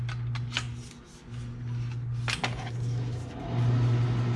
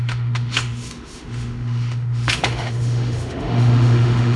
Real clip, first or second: first